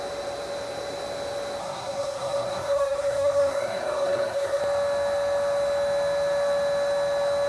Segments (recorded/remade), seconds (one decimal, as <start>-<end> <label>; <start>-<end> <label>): 0.0-1.6 recorded; 1.6-4.6 remade; 4.6-7.5 recorded